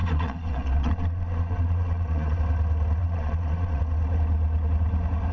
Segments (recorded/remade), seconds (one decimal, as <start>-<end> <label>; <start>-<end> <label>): 0.0-2.4 remade; 2.4-3.0 recorded; 3.0-3.8 remade; 3.8-5.3 recorded